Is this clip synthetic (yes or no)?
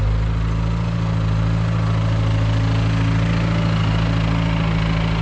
no